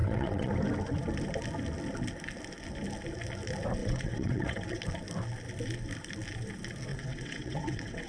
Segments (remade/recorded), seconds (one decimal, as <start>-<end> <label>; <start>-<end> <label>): 0.0-0.5 remade; 0.5-3.8 recorded; 3.8-4.8 remade; 4.8-6.9 recorded; 6.9-8.1 remade